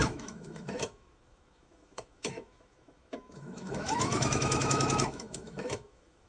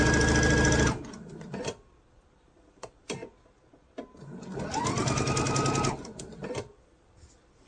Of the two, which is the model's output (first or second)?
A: first